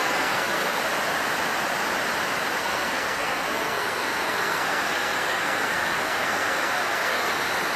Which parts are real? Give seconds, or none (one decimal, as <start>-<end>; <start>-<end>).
0.8-2.6; 7.3-7.8